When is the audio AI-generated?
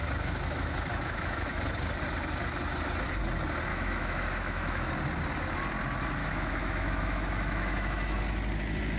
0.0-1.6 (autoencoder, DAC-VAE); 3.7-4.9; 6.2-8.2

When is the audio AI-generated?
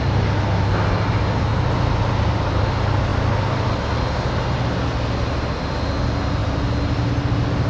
none